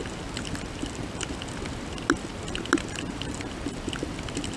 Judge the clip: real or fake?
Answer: real